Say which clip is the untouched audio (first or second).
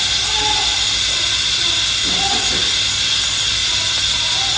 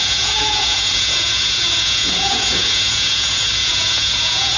first